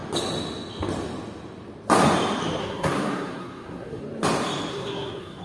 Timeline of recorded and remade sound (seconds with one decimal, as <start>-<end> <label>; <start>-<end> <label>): 0.0-2.6 recorded; 2.6-4.0 remade; 4.0-4.7 recorded; 4.7-5.4 remade